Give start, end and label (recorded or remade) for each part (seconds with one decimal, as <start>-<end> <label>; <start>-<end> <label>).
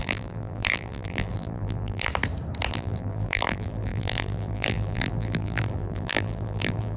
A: 0.0-2.1 remade; 2.1-2.7 recorded; 2.7-7.0 remade